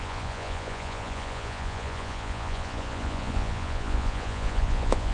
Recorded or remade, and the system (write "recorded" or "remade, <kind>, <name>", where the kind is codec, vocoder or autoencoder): remade, vocoder, Vocos